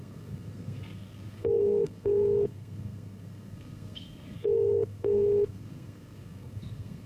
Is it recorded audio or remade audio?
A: remade